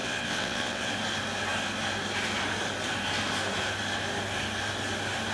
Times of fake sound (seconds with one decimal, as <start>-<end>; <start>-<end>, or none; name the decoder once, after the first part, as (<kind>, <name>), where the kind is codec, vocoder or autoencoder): 0.0-0.9 (vocoder, WaveNeXt)